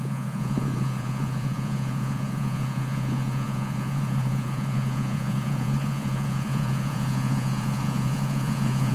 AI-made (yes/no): yes